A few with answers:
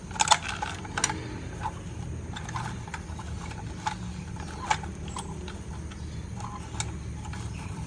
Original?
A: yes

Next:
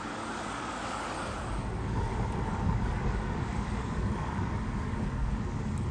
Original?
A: no